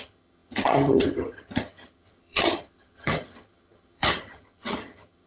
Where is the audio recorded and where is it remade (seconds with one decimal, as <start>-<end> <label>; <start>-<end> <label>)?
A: 0.0-5.3 remade